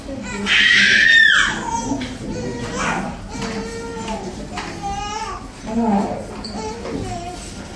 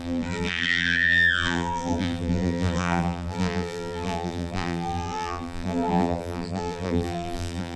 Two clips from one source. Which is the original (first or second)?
first